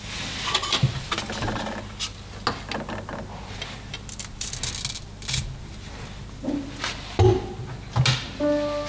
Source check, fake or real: real